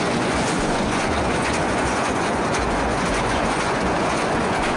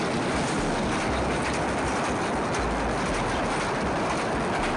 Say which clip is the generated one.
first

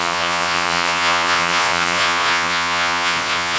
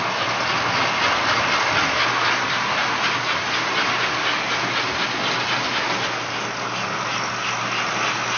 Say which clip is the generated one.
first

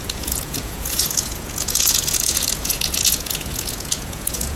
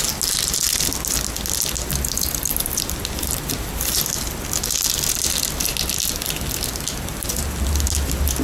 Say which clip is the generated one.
first